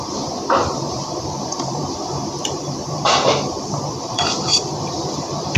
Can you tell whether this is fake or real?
fake